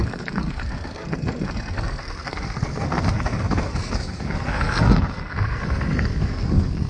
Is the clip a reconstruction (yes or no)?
yes